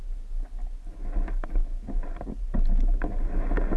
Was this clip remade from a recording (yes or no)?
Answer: no